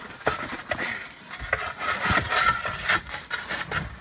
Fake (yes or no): no